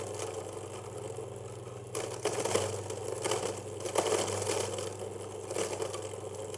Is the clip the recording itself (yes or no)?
yes